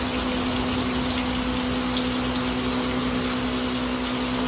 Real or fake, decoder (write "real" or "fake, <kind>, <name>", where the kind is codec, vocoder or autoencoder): real